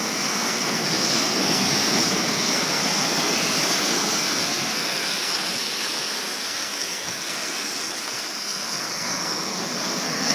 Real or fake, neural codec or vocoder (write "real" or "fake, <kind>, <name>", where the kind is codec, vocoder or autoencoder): fake, codec, SNAC